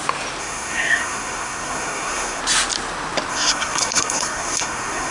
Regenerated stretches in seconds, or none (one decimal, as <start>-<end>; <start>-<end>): 0.4-2.4; 3.3-5.1